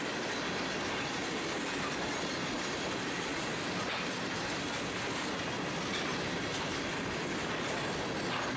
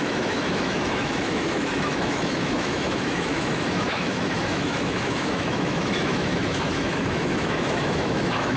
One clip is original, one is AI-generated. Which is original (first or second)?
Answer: first